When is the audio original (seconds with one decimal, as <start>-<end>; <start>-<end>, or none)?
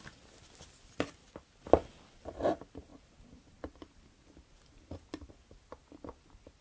0.0-6.6